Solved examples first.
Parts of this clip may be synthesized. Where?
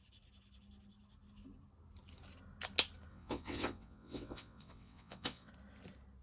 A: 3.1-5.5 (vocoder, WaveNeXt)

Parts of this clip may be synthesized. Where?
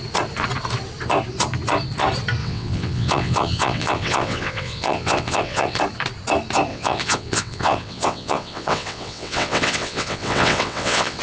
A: 2.4-5.8 (vocoder, WaveNeXt); 6.7-11.2